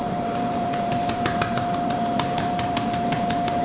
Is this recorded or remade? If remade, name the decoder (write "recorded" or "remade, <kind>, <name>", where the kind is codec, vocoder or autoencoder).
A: remade, vocoder, BigVGAN v2